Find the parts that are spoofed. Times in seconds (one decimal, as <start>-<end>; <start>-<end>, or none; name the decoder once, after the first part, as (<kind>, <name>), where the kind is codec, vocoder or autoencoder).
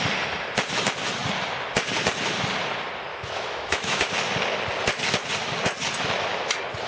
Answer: 3.1-4.1 (autoencoder, DAC-VAE)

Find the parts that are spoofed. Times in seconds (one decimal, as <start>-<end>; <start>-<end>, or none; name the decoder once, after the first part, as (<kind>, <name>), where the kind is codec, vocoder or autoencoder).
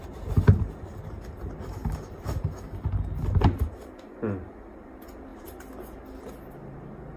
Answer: none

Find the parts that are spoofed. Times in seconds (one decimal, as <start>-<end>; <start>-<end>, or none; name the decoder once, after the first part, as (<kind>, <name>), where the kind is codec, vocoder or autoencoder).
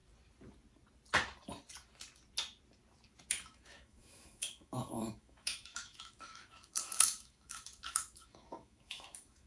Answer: 3.3-9.5 (autoencoder, DAC-VAE)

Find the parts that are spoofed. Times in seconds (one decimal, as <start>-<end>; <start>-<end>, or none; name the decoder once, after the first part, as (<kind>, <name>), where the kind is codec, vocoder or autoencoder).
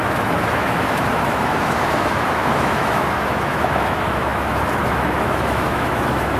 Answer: 0.0-6.4 (autoencoder, DAC-VAE)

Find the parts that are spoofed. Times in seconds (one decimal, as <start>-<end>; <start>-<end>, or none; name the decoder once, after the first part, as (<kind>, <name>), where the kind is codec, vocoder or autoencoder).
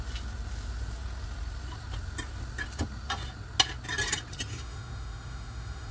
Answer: 4.5-5.9 (autoencoder, DAC-VAE)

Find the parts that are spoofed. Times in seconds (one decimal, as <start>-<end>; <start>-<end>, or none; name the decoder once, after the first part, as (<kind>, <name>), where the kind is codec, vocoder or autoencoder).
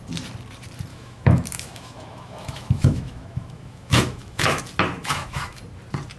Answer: 0.9-4.6 (autoencoder, DAC-VAE); 5.0-5.6